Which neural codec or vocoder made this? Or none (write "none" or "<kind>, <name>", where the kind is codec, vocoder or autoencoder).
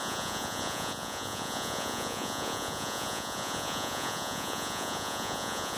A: vocoder, Vocos